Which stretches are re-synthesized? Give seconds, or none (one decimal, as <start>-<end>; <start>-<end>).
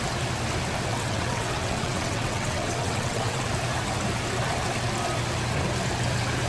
0.9-3.5